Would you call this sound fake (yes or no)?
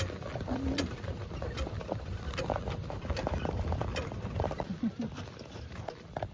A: yes